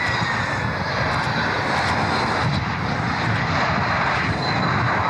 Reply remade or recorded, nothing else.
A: recorded